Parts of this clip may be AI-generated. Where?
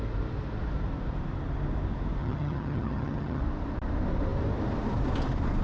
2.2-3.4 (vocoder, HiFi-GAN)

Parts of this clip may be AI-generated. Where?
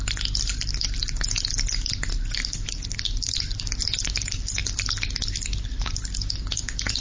none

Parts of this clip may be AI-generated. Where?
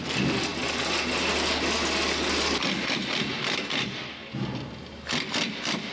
none